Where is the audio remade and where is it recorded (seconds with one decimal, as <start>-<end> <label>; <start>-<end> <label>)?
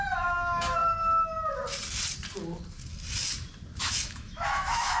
0.0-0.8 remade; 0.8-3.8 recorded; 3.8-5.0 remade